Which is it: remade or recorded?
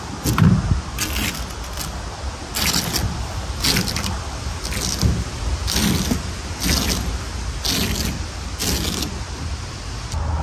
recorded